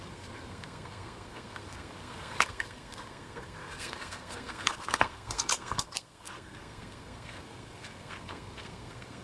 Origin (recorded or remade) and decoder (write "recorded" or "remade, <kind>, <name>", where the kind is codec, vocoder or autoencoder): remade, codec, SNAC